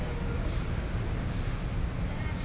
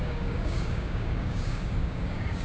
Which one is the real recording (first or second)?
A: first